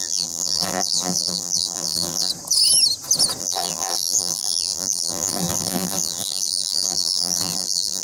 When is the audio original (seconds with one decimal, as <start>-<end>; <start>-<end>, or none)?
2.3-3.4